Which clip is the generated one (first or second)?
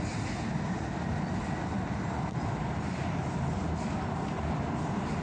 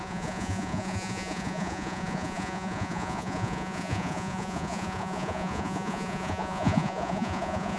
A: second